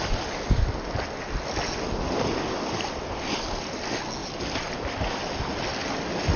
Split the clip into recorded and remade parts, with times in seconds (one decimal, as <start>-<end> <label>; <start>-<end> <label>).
0.0-4.2 recorded; 4.2-5.1 remade; 5.1-6.4 recorded